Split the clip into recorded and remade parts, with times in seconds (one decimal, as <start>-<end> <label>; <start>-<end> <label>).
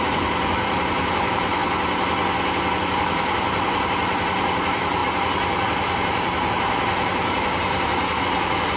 0.0-1.6 remade; 1.6-2.8 recorded; 2.8-8.8 remade